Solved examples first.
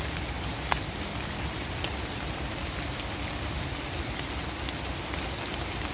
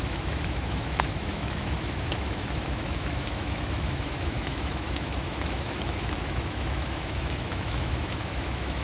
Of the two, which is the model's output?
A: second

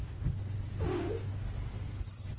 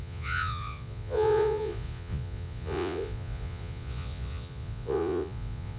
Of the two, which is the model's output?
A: second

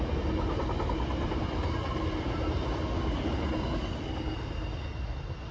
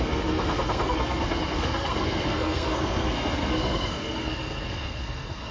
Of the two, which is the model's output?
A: second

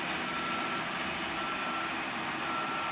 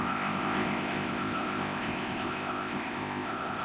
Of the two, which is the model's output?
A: second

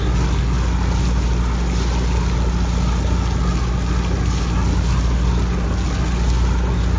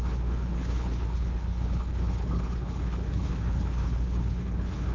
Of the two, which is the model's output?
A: second